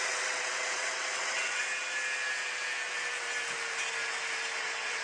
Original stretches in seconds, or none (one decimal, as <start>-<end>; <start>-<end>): 1.6-4.6